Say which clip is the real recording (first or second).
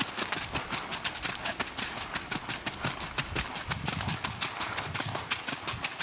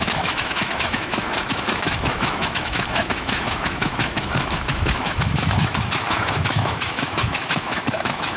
first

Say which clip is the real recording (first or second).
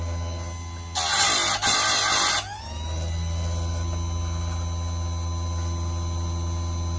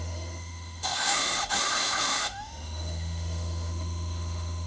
first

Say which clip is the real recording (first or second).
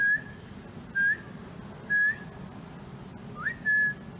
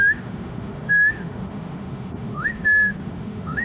first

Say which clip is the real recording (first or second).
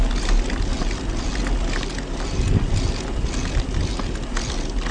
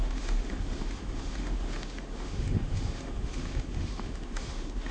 first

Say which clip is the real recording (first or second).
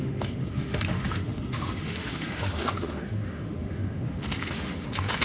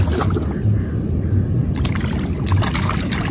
second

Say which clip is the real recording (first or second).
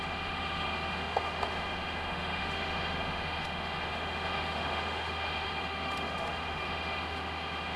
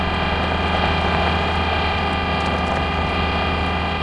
second